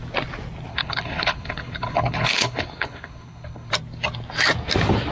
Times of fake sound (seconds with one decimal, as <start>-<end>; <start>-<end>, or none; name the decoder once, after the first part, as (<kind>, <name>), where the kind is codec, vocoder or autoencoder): 0.7-3.7 (codec, HILCodec)

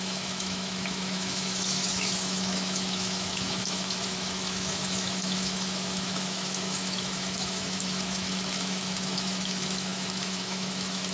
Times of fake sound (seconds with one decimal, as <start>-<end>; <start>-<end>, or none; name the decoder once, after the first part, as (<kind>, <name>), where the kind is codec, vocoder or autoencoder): 0.0-11.1 (autoencoder, DAC-VAE)

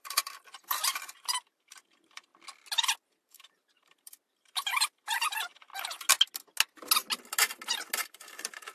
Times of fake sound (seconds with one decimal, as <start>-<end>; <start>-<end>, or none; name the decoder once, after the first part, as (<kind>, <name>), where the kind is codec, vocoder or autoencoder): 0.0-2.3 (vocoder, BigVGAN v2); 3.3-5.7; 8.0-8.7

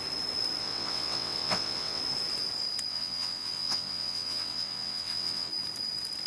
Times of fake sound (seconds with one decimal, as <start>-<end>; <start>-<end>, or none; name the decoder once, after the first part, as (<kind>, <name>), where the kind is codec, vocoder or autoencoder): 0.6-2.0 (vocoder, WaveNeXt); 2.9-5.5

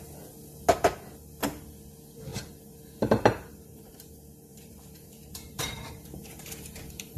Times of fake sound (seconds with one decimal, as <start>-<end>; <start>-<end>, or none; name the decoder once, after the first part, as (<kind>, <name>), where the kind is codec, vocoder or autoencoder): 2.3-4.1 (vocoder, BigVGAN v2); 4.5-7.2

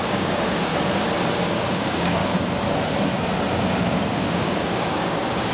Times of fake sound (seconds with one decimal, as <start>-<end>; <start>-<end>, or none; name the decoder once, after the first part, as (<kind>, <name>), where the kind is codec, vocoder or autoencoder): 0.0-0.7 (codec, DAC); 1.3-2.2; 3.5-5.5

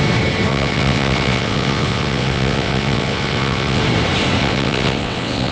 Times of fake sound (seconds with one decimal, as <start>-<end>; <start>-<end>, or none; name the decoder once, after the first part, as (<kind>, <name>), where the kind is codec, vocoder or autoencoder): 0.5-3.8 (vocoder, WaveNeXt); 4.4-5.5